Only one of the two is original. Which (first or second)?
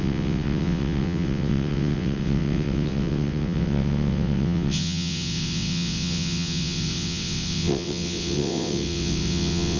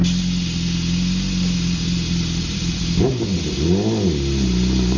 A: second